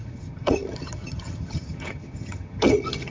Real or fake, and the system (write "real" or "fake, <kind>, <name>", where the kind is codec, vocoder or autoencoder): fake, vocoder, HiFi-GAN